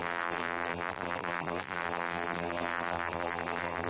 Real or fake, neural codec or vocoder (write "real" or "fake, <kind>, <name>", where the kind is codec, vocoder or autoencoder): fake, vocoder, BigVGAN v2